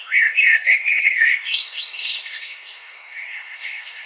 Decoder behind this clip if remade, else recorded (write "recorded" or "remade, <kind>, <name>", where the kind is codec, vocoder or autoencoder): remade, codec, SNAC